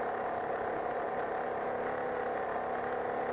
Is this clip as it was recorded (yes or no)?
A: yes